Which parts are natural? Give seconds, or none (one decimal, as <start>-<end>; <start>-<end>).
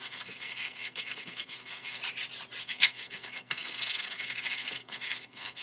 2.0-2.6